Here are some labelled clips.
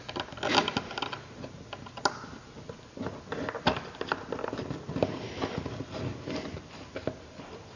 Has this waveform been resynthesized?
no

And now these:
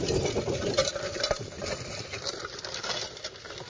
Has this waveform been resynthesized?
no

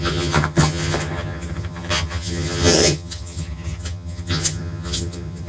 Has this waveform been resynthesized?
yes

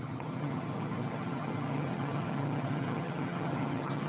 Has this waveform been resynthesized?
yes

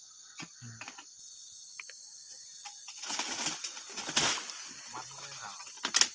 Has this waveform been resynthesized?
no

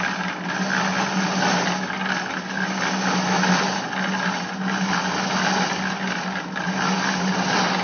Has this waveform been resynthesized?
no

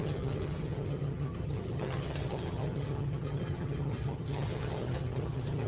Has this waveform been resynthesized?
yes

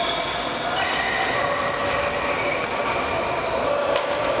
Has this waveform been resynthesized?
no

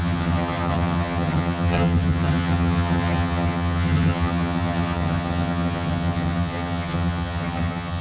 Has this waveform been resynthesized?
yes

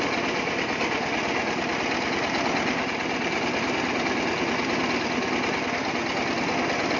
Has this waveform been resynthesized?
no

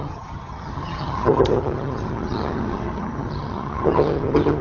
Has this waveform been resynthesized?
yes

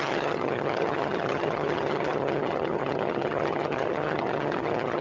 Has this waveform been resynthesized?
yes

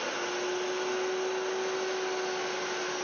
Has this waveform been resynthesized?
no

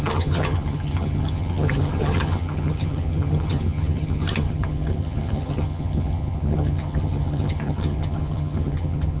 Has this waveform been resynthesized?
yes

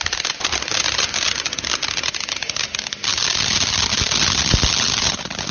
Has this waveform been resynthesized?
no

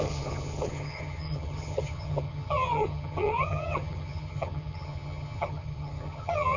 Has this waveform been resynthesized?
yes